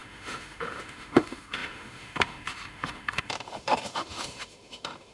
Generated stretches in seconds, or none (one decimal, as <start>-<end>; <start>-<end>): 0.0-5.1